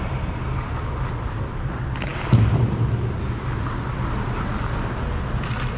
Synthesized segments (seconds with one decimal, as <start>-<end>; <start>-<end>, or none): none

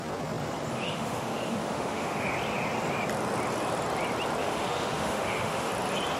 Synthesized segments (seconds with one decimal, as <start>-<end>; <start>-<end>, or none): 0.7-2.3; 4.4-5.7

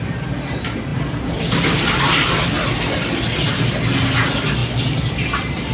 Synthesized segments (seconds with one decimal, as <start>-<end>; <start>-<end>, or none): 4.6-5.7